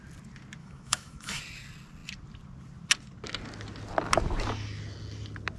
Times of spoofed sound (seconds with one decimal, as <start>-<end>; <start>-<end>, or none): 0.6-1.4